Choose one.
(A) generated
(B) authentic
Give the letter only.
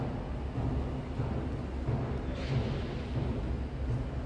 B